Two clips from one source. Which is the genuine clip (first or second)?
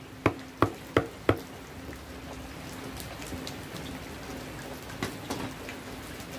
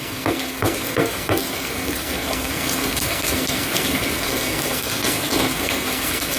first